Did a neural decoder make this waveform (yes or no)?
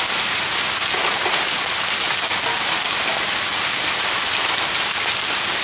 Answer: no